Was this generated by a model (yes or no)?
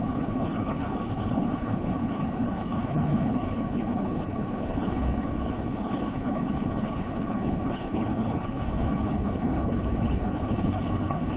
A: yes